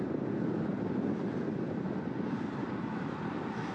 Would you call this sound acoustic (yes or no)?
yes